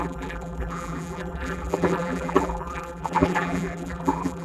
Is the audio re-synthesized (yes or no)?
yes